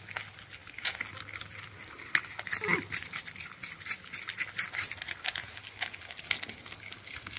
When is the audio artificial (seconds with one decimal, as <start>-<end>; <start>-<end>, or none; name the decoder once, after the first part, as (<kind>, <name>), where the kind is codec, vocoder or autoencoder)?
none